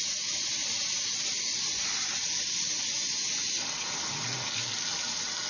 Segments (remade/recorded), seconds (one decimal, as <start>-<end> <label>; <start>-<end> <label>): 0.0-0.6 remade; 0.6-3.9 recorded; 3.9-4.3 remade; 4.3-5.5 recorded